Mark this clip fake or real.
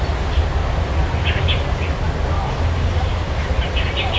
real